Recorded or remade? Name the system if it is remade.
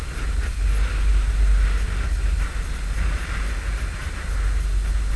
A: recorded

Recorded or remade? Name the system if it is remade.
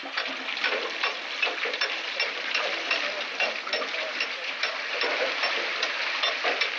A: recorded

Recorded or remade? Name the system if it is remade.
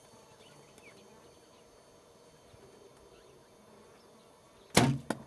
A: recorded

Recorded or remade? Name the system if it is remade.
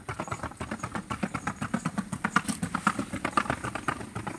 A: recorded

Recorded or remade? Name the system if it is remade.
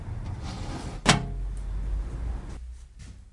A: recorded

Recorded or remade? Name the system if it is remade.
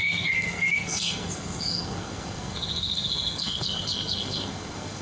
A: remade, codec, SNAC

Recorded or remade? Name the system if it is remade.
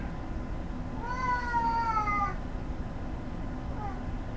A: recorded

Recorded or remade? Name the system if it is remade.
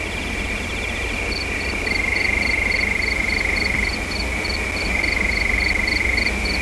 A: recorded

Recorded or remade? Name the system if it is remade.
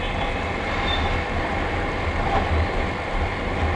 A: recorded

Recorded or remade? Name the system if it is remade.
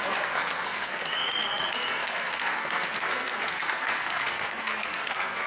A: remade, codec, SNAC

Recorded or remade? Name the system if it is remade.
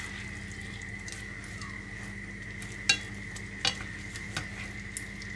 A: recorded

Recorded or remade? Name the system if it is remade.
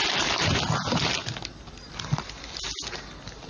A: recorded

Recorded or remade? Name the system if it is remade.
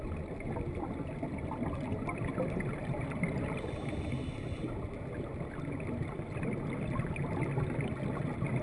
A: recorded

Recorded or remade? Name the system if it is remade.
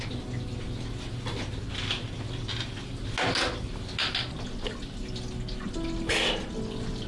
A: recorded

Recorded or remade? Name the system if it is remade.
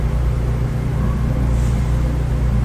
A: recorded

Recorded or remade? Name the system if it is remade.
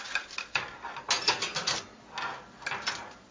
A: recorded